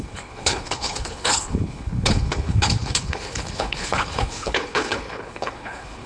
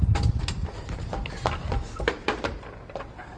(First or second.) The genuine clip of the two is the second